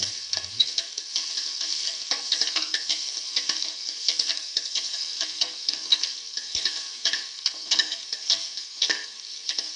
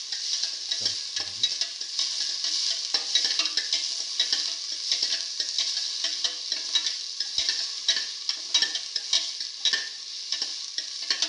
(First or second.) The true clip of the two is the second